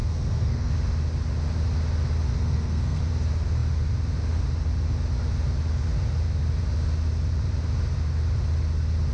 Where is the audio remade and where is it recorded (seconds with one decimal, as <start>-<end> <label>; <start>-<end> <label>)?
0.0-0.7 remade; 0.7-2.3 recorded; 2.3-3.0 remade; 3.0-9.1 recorded